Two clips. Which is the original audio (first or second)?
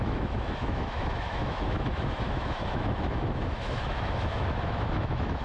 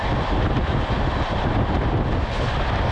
second